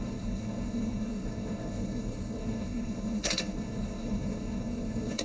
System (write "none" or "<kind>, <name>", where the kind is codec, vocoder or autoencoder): codec, SNAC